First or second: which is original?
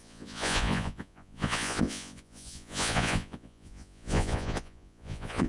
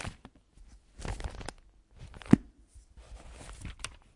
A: second